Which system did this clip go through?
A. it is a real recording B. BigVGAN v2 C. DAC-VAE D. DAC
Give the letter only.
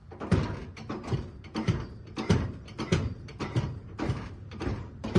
B